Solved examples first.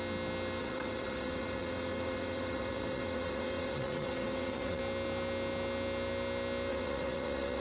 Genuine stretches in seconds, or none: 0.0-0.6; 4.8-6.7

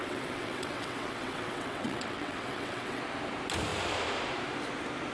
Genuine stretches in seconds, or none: 3.0-5.1

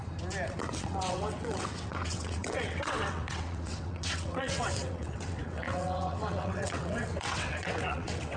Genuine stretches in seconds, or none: 0.0-0.6

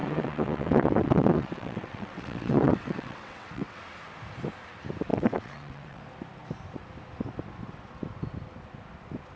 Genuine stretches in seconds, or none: 3.8-5.1; 6.0-9.4

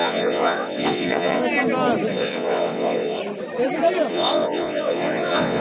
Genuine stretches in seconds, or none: 1.4-2.1; 3.2-4.1

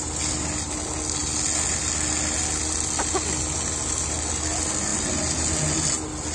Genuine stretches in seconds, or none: 0.0-6.3